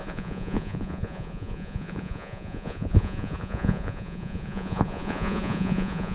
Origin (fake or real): fake